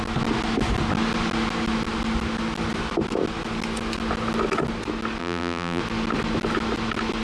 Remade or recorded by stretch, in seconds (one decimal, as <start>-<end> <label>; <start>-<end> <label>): 0.0-5.2 recorded; 5.2-5.8 remade; 5.8-7.2 recorded